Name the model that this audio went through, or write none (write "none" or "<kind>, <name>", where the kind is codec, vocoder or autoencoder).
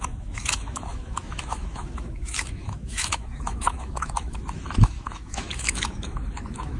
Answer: autoencoder, DAC-VAE